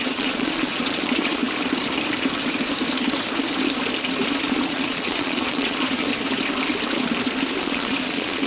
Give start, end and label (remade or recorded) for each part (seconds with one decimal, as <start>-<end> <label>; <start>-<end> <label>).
0.0-1.4 remade; 1.4-4.4 recorded; 4.4-6.1 remade; 6.1-7.6 recorded; 7.6-8.5 remade